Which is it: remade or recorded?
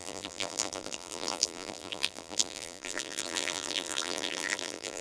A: remade